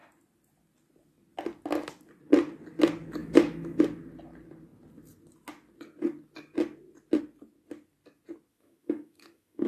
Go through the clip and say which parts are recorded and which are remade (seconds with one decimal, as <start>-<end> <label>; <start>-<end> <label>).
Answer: 0.0-3.2 recorded; 3.2-3.8 remade; 3.8-8.5 recorded; 8.5-9.7 remade